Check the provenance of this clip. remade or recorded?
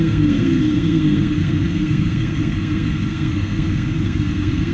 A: remade